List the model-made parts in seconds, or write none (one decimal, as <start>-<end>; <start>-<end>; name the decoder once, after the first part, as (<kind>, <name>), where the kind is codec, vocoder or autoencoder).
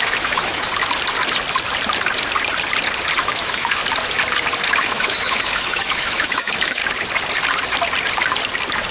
0.0-0.7 (autoencoder, DAC-VAE); 3.2-3.8; 4.7-6.8